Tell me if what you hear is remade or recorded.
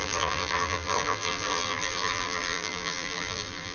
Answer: remade